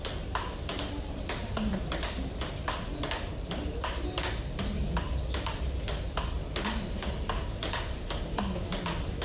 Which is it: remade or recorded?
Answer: recorded